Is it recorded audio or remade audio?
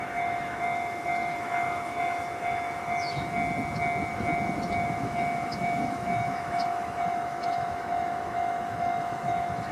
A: remade